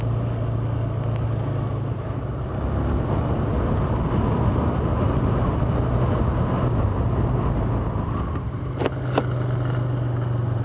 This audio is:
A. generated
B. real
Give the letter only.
B